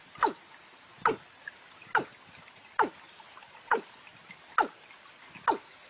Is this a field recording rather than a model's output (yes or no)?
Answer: yes